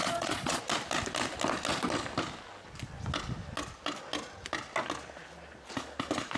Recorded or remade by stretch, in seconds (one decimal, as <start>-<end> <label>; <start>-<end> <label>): 0.0-0.6 remade; 0.6-6.4 recorded